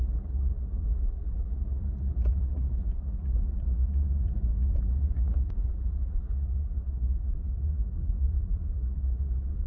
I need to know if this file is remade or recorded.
remade